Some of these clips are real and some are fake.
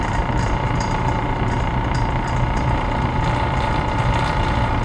fake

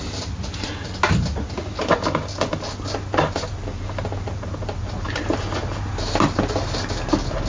real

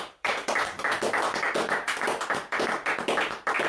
fake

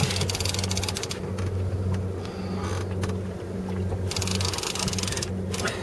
real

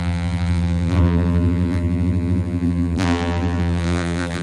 fake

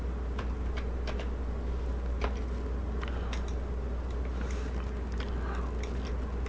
real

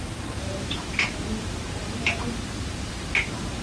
fake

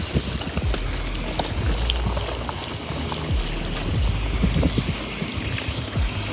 real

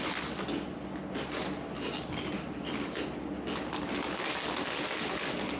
real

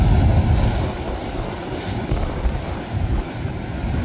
real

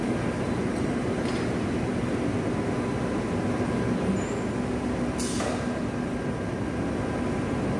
real